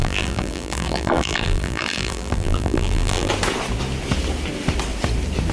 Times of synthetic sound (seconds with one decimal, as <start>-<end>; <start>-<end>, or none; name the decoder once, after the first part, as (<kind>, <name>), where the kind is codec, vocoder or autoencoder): 0.0-3.3 (vocoder, BigVGAN v2)